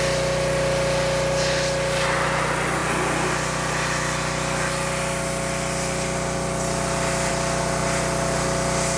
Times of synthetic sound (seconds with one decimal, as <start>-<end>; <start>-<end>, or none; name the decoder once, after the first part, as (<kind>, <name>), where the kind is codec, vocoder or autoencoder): none